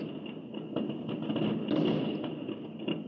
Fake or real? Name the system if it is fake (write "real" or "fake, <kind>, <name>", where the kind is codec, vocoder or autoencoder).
real